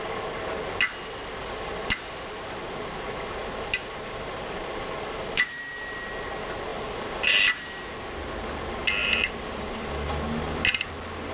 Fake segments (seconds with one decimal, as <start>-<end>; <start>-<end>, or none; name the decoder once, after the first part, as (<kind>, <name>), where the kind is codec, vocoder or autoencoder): 1.4-1.9 (vocoder, BigVGAN v2); 3.4-5.6; 6.7-7.8; 9.0-10.1